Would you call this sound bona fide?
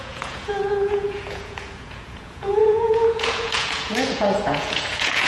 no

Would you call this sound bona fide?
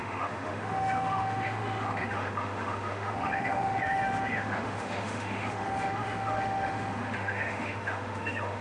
no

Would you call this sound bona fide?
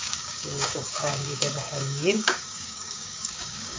no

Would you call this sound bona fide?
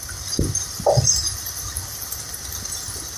no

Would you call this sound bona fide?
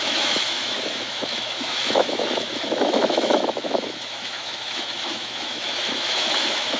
no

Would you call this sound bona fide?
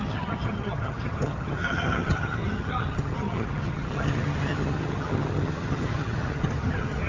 no